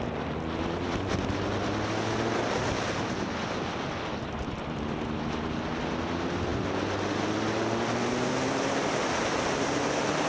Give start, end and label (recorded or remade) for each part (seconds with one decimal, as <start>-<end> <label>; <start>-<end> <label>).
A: 0.0-10.3 recorded